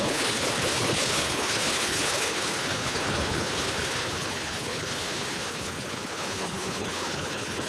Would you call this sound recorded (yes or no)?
no